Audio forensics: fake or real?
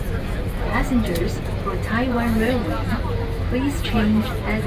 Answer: real